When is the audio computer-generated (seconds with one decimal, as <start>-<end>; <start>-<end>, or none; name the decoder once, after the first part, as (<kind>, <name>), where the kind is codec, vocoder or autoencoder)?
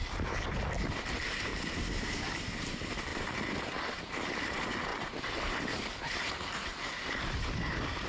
1.5-2.2 (vocoder, BigVGAN v2); 3.1-4.3; 4.9-6.3